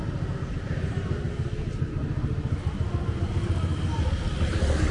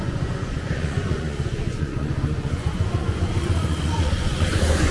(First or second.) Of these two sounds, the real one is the first